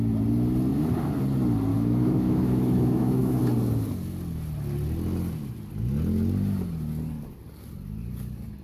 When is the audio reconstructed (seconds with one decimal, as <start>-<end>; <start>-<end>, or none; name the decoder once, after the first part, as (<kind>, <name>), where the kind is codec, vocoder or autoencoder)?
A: 1.7-3.4 (autoencoder, DAC-VAE)